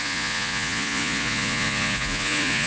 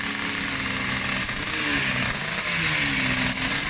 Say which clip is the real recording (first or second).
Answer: second